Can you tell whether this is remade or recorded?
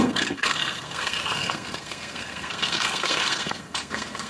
remade